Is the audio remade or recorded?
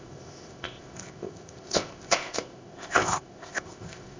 remade